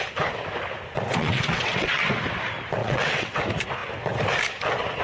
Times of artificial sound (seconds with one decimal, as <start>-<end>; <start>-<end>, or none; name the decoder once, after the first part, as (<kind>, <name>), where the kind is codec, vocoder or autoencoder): 1.1-2.1 (vocoder, WaveNeXt); 2.8-3.4

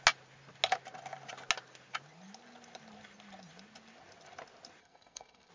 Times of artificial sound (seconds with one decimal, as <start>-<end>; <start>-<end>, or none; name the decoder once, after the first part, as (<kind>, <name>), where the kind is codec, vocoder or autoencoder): 4.8-5.5 (codec, SNAC)

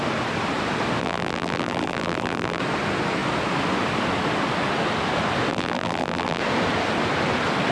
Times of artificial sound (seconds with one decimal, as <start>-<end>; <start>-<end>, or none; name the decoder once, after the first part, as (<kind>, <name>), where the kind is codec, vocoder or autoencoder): 1.0-2.6 (vocoder, BigVGAN v2); 5.5-6.4

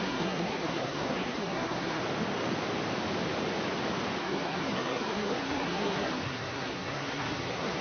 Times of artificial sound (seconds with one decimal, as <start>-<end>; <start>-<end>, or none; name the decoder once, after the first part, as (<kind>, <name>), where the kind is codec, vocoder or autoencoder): 0.0-2.0 (codec, SNAC); 4.2-7.8

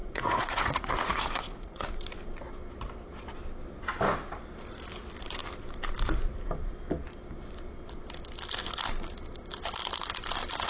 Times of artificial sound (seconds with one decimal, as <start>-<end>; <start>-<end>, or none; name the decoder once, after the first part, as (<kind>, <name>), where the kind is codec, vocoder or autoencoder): 0.0-1.9 (vocoder, Vocos)

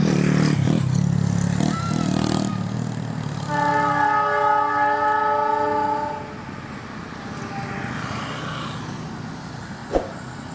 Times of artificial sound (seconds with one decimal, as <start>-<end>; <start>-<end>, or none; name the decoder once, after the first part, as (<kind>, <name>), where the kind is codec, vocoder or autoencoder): 9.8-10.5 (vocoder, BigVGAN v2)